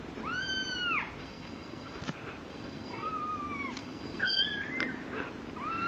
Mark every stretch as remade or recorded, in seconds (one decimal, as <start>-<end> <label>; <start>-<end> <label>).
0.0-1.2 recorded; 1.2-2.0 remade; 2.0-2.5 recorded; 2.5-3.1 remade; 3.1-3.8 recorded; 3.8-4.4 remade; 4.4-5.9 recorded

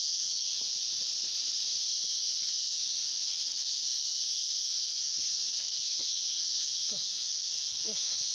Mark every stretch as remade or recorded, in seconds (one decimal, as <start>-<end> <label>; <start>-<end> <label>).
0.0-0.7 remade; 0.7-2.2 recorded; 2.2-8.3 remade

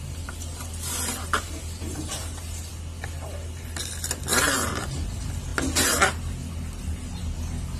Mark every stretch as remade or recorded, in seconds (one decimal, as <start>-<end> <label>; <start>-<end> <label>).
0.0-5.5 remade; 5.5-6.0 recorded; 6.0-7.8 remade

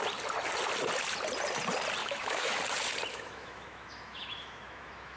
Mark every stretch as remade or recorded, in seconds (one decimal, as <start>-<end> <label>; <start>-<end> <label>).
0.0-2.0 recorded; 2.0-2.6 remade; 2.6-3.1 recorded; 3.1-5.2 remade